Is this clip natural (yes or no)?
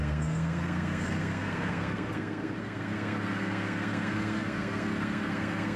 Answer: no